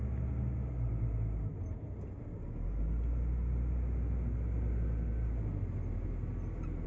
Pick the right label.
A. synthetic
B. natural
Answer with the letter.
B